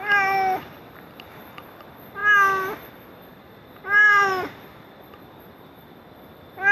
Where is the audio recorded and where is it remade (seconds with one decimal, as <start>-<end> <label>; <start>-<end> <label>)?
0.0-3.3 recorded; 3.3-5.0 remade; 5.0-6.7 recorded